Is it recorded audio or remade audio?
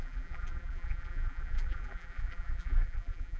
remade